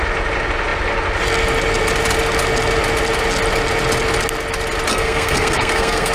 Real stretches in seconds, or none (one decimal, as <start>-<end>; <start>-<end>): 0.0-4.9